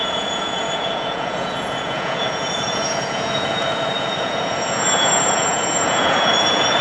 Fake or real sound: fake